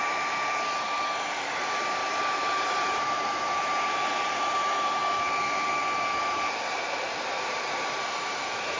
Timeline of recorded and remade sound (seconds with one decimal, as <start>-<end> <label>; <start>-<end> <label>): 0.0-5.0 remade; 5.0-6.2 recorded; 6.2-8.8 remade

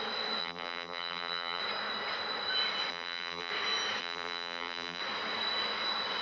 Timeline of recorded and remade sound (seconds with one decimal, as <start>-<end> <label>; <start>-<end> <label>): 0.0-0.4 recorded; 0.4-1.6 remade; 1.6-2.9 recorded; 2.9-3.5 remade; 3.5-4.0 recorded; 4.0-5.0 remade; 5.0-6.2 recorded

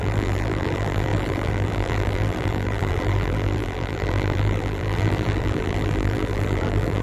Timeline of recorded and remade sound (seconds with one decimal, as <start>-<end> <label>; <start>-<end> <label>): 0.0-7.0 remade

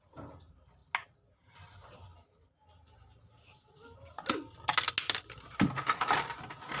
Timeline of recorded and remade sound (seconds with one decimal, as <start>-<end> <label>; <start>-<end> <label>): 0.0-6.8 recorded

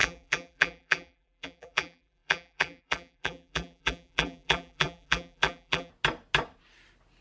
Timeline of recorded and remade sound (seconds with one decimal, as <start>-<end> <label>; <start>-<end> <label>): 0.0-5.9 remade; 5.9-7.2 recorded

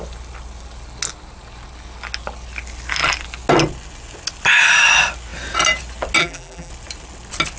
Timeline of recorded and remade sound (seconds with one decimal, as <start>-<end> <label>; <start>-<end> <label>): 0.0-6.2 recorded; 6.2-6.7 remade; 6.7-7.6 recorded